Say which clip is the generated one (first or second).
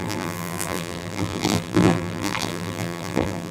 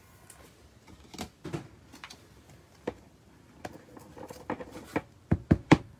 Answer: first